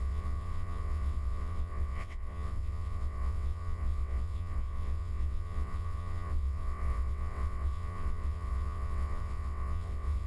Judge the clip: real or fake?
fake